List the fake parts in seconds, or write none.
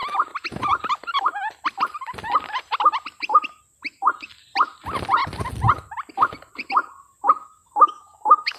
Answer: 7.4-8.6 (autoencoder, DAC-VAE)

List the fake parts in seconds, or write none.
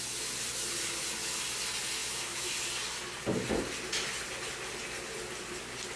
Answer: 2.0-2.5 (autoencoder, DAC-VAE)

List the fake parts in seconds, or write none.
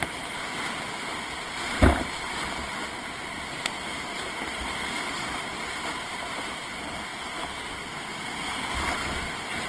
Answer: none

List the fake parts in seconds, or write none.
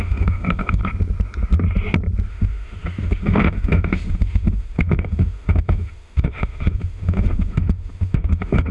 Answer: 0.0-0.8 (autoencoder, DAC-VAE); 2.3-8.7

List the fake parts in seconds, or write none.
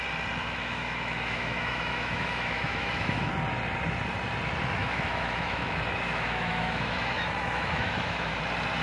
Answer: 0.4-3.3 (autoencoder, DAC-VAE); 4.8-8.4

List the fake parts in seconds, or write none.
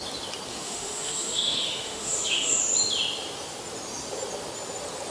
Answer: 0.5-2.6 (autoencoder, DAC-VAE)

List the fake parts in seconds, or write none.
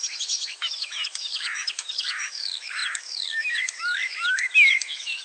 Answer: 0.0-5.2 (autoencoder, DAC-VAE)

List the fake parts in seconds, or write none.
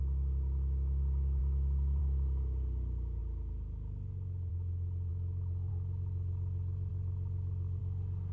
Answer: 5.1-5.7 (autoencoder, DAC-VAE)